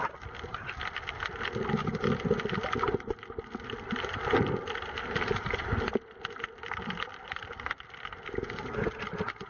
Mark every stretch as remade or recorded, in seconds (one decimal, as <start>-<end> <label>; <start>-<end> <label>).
0.0-9.5 recorded